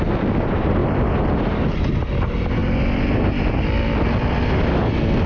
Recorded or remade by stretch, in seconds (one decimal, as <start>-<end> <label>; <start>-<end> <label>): 0.0-5.3 recorded